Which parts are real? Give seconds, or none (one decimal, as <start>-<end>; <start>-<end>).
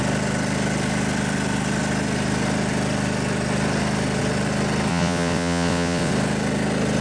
0.0-4.9; 6.1-7.0